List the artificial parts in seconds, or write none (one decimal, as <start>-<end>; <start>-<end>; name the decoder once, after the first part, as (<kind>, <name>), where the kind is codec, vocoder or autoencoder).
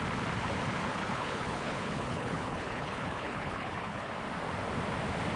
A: 0.9-4.1 (codec, HILCodec)